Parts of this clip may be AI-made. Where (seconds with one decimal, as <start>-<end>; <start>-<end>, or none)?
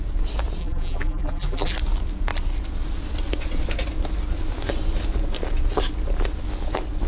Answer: 0.6-1.7